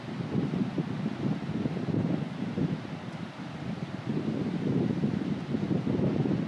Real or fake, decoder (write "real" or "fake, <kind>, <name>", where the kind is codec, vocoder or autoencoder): real